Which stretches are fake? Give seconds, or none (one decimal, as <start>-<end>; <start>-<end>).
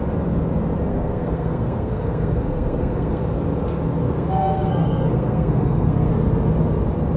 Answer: 0.9-3.2; 4.0-6.1